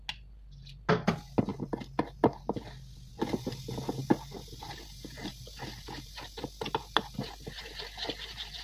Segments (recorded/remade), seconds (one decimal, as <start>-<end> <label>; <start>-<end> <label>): 0.0-8.6 recorded